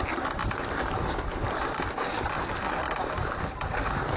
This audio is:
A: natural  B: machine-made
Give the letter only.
A